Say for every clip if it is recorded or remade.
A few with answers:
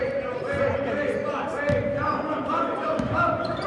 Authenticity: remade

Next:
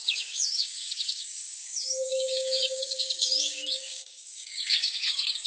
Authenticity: remade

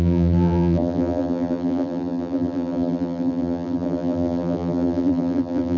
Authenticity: remade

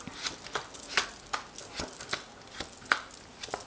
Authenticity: recorded